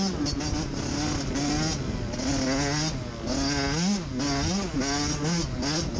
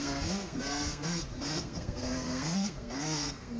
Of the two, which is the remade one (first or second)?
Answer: second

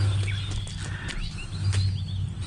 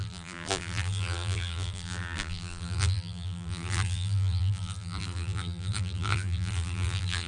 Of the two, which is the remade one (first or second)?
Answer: second